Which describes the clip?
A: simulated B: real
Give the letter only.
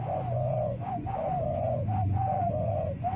A